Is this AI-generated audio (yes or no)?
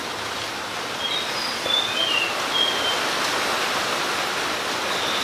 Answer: no